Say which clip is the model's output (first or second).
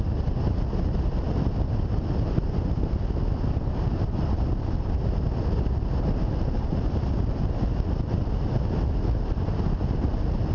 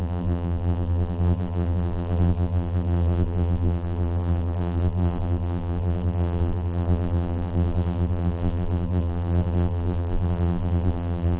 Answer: second